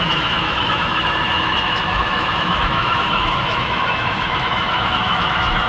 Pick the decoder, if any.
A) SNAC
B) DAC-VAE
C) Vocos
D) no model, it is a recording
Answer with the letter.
B